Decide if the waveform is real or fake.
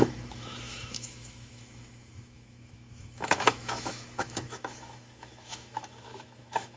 fake